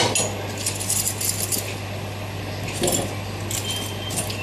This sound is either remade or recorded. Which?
recorded